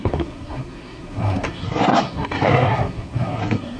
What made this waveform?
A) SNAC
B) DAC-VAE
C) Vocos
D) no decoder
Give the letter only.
A